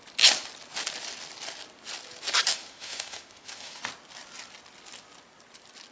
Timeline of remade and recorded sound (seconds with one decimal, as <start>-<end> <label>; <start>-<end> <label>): 0.0-2.5 recorded; 2.5-3.8 remade; 3.8-5.9 recorded